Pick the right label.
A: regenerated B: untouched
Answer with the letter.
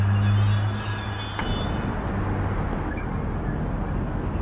B